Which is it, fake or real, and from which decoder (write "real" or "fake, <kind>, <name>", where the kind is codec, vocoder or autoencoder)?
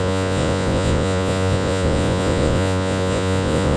fake, vocoder, Vocos